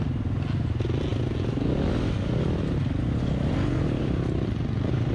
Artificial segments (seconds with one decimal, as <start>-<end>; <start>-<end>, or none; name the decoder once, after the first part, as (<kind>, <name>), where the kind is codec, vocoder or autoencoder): none